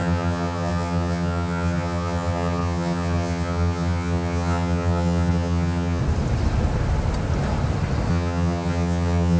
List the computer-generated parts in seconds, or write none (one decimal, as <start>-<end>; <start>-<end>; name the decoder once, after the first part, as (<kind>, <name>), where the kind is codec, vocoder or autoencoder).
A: 0.0-6.0 (vocoder, HiFi-GAN); 8.1-9.4